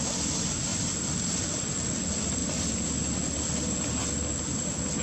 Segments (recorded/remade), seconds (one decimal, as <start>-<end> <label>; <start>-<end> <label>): 0.0-5.0 recorded